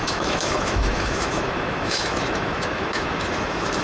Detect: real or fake fake